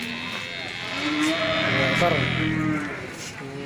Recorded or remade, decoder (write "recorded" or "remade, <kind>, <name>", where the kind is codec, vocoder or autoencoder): recorded